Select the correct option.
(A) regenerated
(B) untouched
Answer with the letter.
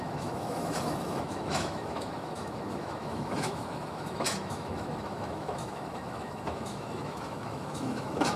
A